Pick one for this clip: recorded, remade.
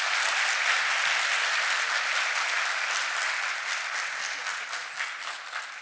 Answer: recorded